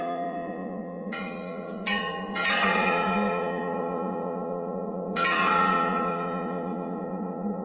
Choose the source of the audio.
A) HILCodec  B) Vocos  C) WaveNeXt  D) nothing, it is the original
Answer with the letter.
B